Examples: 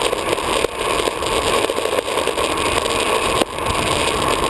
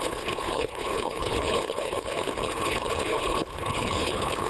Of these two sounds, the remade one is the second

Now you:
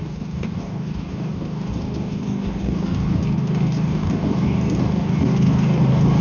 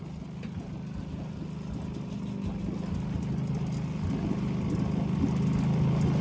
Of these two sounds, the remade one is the first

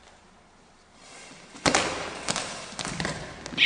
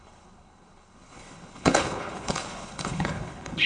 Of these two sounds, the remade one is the second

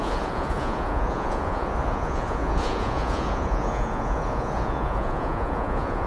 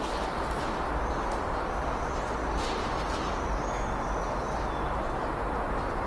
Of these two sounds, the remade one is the first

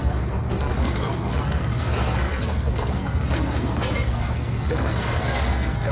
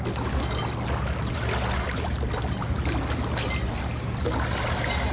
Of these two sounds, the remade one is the first